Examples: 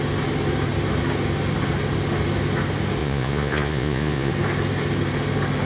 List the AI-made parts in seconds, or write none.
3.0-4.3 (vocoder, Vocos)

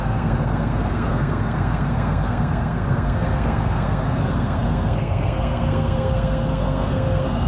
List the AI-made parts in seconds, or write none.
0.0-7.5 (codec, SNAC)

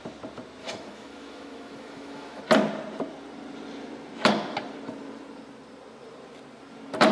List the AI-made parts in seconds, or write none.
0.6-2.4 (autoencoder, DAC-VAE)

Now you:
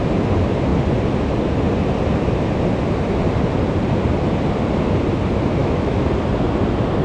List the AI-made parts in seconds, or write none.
5.6-6.1 (autoencoder, DAC-VAE)